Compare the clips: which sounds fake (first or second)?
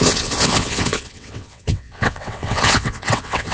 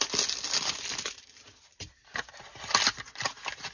first